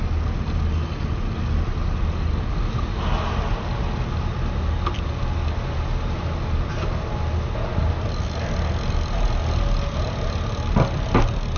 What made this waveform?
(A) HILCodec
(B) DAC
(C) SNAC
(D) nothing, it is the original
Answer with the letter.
D